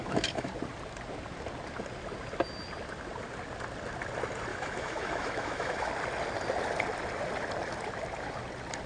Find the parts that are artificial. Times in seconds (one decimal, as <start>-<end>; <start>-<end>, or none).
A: 0.0-0.5; 4.5-5.9